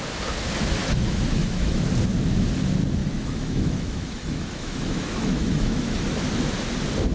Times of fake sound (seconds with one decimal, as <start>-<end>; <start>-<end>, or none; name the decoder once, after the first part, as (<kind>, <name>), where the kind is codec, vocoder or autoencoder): 0.8-1.8 (autoencoder, DAC-VAE); 3.0-6.2